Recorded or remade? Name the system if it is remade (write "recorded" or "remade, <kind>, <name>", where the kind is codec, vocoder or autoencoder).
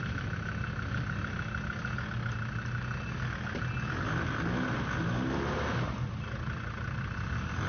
recorded